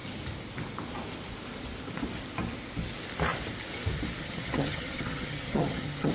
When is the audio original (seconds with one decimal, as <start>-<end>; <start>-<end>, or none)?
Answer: 0.0-4.2